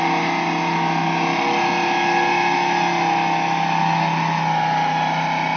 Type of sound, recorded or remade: recorded